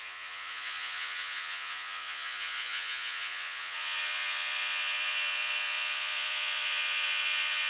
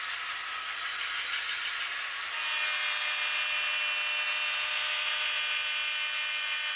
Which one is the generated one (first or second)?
first